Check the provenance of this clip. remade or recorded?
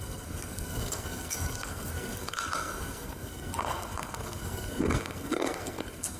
remade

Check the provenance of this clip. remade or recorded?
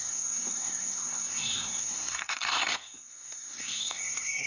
remade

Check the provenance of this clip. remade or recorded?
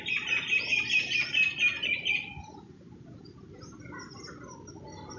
recorded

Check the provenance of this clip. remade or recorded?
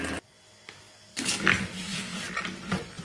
recorded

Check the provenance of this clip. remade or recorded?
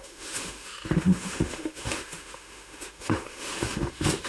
remade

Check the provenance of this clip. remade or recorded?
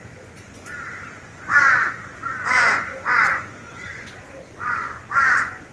remade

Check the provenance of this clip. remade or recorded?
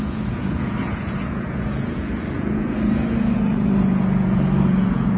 remade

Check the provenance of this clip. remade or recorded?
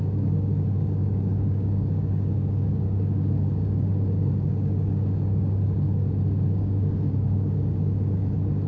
remade